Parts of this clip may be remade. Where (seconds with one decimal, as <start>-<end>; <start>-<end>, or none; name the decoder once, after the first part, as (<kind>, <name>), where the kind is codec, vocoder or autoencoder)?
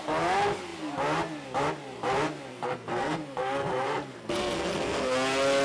2.5-5.1 (codec, SNAC)